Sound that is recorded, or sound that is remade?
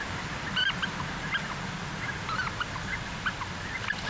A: recorded